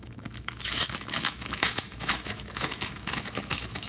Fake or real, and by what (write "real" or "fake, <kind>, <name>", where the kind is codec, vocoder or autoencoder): fake, autoencoder, DAC-VAE